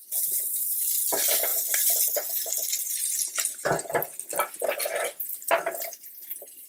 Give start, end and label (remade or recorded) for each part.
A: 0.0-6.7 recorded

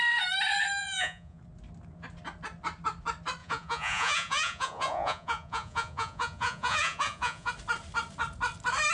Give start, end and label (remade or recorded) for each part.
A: 0.0-0.8 recorded; 0.8-1.4 remade; 1.4-3.4 recorded; 3.4-7.5 remade; 7.5-8.9 recorded

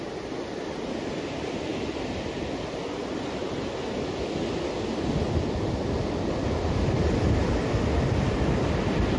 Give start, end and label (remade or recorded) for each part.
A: 0.0-9.2 recorded

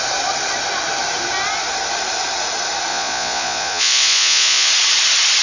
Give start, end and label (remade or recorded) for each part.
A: 0.0-2.9 recorded; 2.9-4.7 remade; 4.7-5.4 recorded

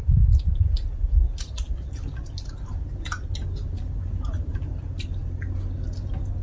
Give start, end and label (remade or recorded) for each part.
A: 0.0-6.4 recorded